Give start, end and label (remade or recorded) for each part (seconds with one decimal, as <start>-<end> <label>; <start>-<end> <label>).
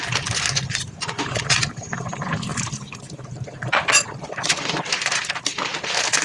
0.0-2.5 recorded; 2.5-5.7 remade; 5.7-6.2 recorded